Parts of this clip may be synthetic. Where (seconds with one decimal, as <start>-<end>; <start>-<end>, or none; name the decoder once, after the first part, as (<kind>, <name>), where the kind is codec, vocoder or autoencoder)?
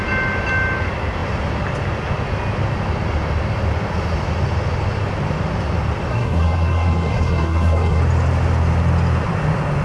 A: 6.1-8.0 (codec, SNAC)